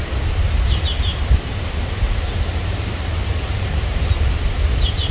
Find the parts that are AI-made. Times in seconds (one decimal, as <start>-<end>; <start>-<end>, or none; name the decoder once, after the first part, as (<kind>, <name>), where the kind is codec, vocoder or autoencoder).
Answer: 0.0-5.1 (vocoder, BigVGAN v2)